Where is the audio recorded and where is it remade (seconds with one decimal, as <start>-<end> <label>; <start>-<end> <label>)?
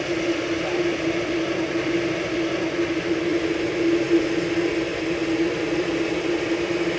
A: 0.0-7.0 remade